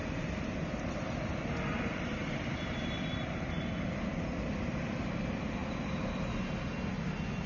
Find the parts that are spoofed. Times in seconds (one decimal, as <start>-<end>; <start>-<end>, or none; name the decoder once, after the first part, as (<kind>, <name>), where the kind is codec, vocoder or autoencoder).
none